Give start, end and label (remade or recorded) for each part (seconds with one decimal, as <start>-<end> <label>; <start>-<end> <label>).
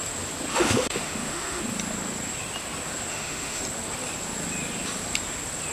0.0-0.5 recorded; 0.5-1.6 remade; 1.6-3.1 recorded; 3.1-3.6 remade; 3.6-5.7 recorded